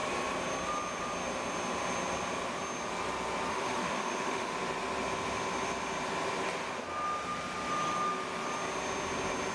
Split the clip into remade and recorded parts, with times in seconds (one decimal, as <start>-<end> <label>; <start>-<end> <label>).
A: 0.0-3.5 recorded; 3.5-4.5 remade; 4.5-9.5 recorded